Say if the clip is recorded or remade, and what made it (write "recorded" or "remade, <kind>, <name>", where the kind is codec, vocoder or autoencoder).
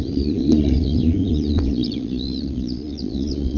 remade, vocoder, Vocos